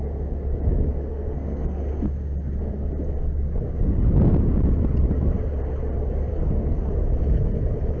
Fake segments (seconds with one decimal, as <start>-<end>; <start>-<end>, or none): 0.9-1.8; 6.3-6.8

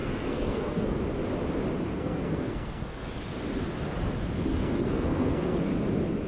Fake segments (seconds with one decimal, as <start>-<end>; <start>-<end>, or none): 0.0-1.0; 1.9-3.1; 4.5-5.6